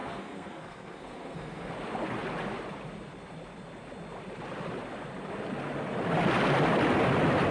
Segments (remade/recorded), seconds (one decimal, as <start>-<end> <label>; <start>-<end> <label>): 0.0-1.7 remade; 1.7-7.5 recorded